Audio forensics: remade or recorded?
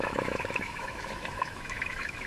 remade